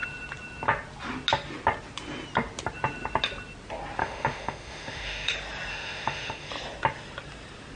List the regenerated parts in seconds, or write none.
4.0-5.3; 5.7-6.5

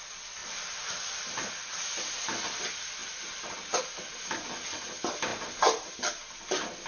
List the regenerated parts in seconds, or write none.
0.4-1.5; 3.0-3.8; 5.3-5.9

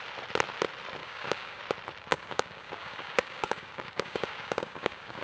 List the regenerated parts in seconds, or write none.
1.0-1.6; 2.1-5.2

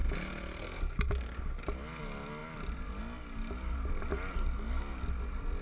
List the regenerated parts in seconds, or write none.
none

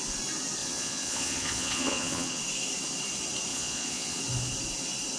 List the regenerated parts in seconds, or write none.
0.6-2.4; 3.5-4.2

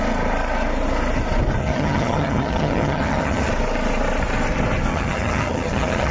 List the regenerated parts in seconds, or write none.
1.6-3.5; 4.9-6.1

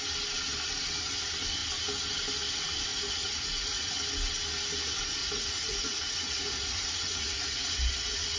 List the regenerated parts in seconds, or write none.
2.9-3.9; 5.2-8.4